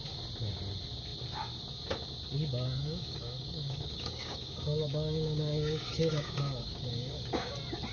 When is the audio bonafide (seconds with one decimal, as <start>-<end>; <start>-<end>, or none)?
0.0-2.8; 7.5-7.9